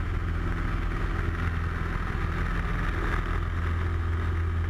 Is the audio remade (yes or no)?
no